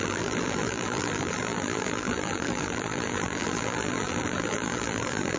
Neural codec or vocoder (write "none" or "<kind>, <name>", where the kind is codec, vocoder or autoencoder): vocoder, BigVGAN v2